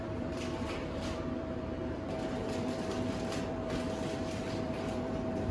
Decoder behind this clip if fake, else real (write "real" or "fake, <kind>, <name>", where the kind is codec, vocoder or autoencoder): fake, vocoder, BigVGAN v2